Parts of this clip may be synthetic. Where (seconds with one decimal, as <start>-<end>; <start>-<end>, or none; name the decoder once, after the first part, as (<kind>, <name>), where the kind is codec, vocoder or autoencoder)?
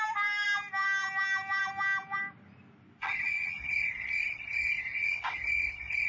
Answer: 3.0-3.6 (vocoder, HiFi-GAN)